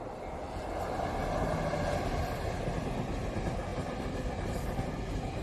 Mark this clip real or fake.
real